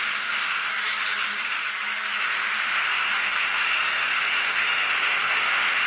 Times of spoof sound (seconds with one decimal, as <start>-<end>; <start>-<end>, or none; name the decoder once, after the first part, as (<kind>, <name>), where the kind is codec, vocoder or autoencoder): 0.0-0.7 (autoencoder, DAC-VAE); 1.2-1.7; 2.2-5.9